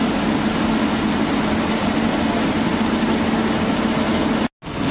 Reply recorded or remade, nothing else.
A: recorded